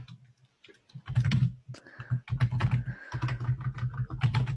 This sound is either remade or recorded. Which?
recorded